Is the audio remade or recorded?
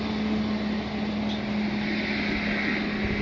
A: recorded